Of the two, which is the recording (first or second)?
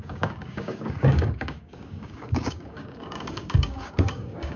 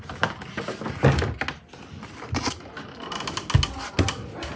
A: second